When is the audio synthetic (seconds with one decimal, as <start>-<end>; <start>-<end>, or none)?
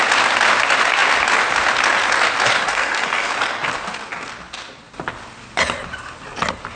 2.7-3.3